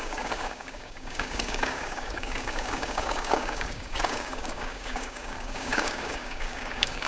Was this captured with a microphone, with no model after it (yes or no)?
no